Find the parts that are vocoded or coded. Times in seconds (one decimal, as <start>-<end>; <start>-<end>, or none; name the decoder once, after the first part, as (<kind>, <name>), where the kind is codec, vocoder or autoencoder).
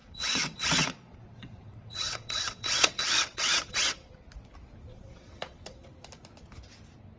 0.0-4.3 (vocoder, WaveNeXt); 4.9-5.9